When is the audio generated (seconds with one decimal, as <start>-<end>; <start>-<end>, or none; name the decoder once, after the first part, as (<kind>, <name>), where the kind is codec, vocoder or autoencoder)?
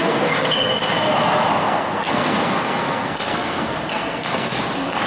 0.0-0.7 (codec, SNAC); 1.6-5.1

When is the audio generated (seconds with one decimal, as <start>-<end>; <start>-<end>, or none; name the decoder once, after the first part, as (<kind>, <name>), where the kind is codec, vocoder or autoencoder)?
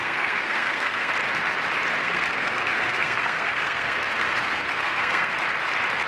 0.0-1.1 (codec, SNAC); 2.0-5.3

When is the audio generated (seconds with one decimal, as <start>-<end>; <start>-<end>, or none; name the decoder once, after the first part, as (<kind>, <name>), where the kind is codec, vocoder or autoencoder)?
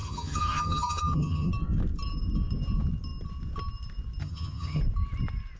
0.0-1.5 (vocoder, HiFi-GAN); 4.2-4.8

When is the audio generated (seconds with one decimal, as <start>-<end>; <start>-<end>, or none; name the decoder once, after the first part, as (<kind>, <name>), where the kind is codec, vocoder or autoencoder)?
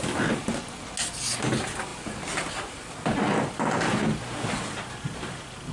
none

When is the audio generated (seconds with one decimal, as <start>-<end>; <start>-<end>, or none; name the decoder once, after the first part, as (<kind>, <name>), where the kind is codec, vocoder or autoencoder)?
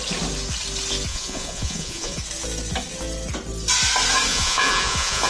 1.1-2.2 (vocoder, Vocos); 4.3-5.3